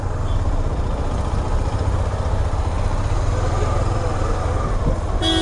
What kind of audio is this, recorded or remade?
recorded